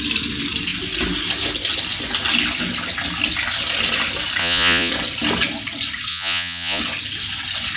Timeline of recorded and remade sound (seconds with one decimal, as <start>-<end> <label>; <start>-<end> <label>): 0.0-4.4 recorded; 4.4-4.9 remade; 4.9-6.1 recorded; 6.1-6.8 remade; 6.8-7.8 recorded